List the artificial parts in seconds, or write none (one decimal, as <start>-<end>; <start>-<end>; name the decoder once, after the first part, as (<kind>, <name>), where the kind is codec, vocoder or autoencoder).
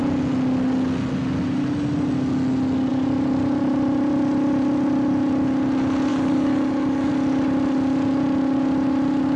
6.1-7.1 (codec, DAC)